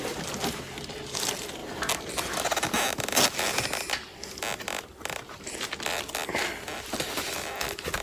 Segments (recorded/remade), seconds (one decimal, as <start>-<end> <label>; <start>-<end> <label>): 0.0-8.0 recorded